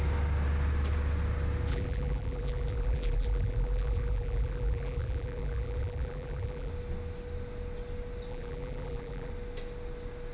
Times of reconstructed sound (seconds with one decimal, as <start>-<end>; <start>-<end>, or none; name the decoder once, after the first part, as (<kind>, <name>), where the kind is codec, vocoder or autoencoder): 1.7-6.7 (vocoder, BigVGAN v2); 8.3-9.3